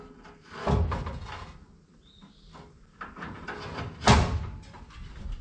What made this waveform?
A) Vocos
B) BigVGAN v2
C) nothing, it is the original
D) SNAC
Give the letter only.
C